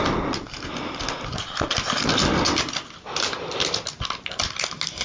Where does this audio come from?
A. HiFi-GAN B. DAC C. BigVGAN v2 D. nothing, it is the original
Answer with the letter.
D